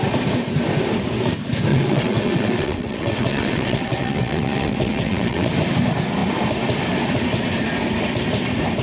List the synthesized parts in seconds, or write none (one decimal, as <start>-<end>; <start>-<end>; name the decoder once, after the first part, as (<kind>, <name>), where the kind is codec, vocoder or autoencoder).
1.7-5.5 (vocoder, WaveNeXt)